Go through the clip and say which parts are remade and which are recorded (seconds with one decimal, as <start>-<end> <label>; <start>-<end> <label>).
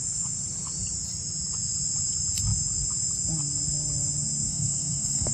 0.0-4.5 recorded; 4.5-5.3 remade